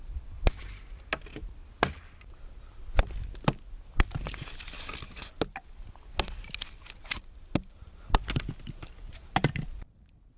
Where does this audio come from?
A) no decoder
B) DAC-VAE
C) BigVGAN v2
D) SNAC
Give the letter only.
A